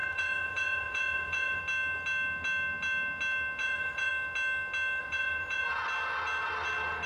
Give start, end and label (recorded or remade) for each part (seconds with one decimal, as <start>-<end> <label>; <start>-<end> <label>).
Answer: 0.0-1.6 remade; 1.6-3.6 recorded; 3.6-4.1 remade; 4.1-5.0 recorded; 5.0-5.8 remade; 5.8-7.1 recorded